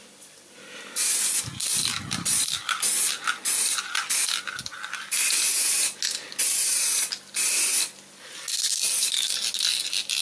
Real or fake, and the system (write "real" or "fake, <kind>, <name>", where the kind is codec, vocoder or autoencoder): real